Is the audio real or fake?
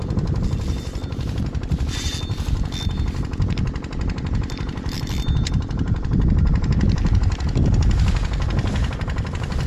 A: real